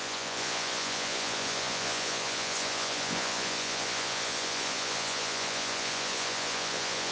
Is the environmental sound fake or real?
fake